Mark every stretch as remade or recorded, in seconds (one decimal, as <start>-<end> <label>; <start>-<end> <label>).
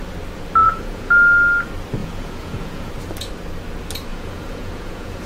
0.0-0.6 recorded; 0.6-1.1 remade; 1.1-2.0 recorded; 2.0-2.9 remade; 2.9-4.1 recorded; 4.1-5.3 remade